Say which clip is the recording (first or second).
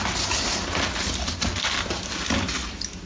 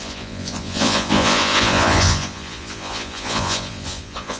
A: first